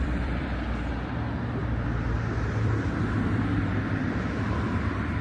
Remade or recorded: remade